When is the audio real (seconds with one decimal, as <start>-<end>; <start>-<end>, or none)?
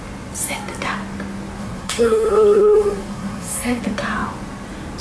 0.0-1.6; 3.8-5.0